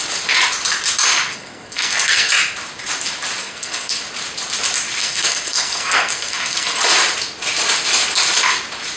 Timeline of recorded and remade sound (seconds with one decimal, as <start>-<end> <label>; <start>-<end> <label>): 0.0-1.3 recorded; 1.3-2.3 remade; 2.3-3.4 recorded; 3.4-4.0 remade; 4.0-5.0 recorded; 5.0-6.8 remade; 6.8-9.0 recorded